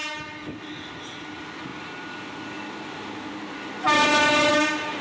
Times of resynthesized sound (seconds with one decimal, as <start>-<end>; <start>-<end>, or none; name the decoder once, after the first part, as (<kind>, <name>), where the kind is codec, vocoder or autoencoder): none